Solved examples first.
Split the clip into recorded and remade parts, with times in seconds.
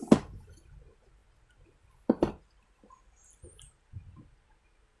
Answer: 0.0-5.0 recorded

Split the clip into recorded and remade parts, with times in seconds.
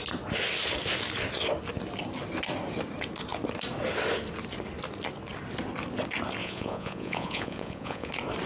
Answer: 0.0-6.4 recorded; 6.4-8.1 remade; 8.1-8.5 recorded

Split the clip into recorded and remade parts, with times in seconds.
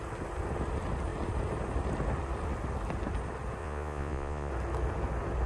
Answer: 0.0-3.6 recorded; 3.6-4.5 remade; 4.5-5.5 recorded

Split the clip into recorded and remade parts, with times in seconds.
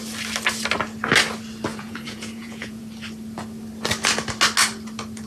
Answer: 0.0-1.7 recorded; 1.7-2.8 remade; 2.8-5.3 recorded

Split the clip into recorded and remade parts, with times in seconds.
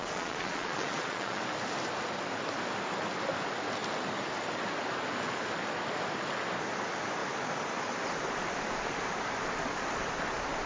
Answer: 0.0-1.4 remade; 1.4-10.7 recorded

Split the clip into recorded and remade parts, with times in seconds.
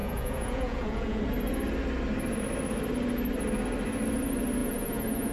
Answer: 0.0-1.2 remade; 1.2-4.6 recorded; 4.6-5.3 remade